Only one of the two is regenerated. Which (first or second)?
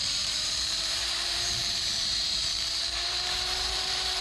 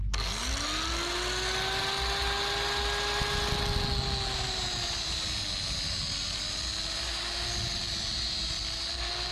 first